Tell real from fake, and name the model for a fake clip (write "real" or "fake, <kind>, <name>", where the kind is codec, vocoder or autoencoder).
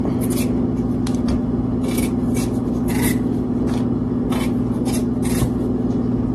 real